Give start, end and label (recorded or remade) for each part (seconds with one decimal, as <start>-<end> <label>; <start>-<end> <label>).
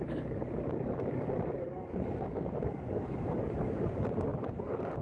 0.0-5.0 remade